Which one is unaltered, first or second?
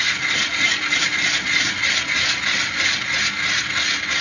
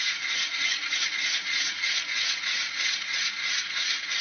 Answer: first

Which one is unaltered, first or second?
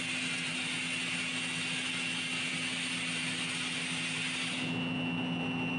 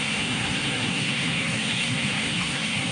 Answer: first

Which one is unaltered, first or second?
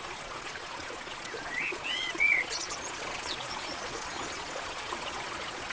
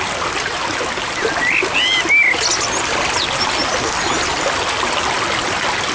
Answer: second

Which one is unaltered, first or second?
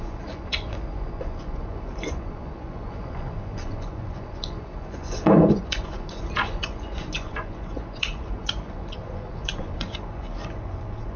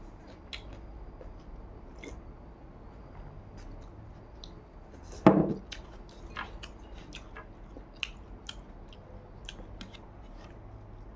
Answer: second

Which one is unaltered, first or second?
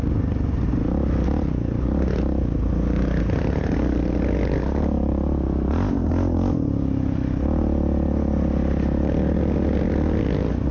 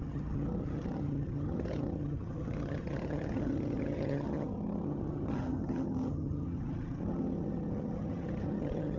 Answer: first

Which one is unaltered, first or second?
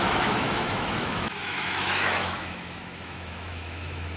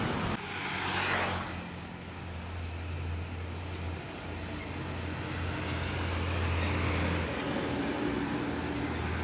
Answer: second